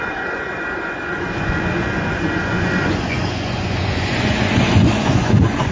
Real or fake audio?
fake